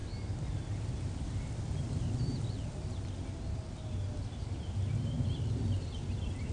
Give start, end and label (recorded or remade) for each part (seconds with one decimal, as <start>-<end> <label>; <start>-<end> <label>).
0.0-6.5 recorded